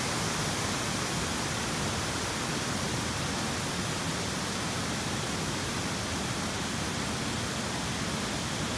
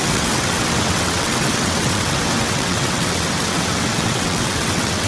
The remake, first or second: second